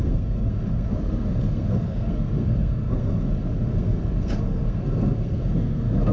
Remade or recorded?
remade